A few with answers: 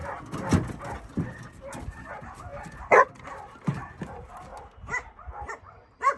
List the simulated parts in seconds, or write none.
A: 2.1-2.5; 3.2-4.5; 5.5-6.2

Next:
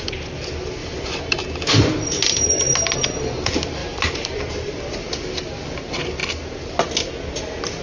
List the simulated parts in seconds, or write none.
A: 0.8-1.4; 3.8-5.1

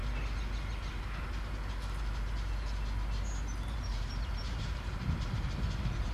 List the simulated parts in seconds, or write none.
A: 3.7-6.1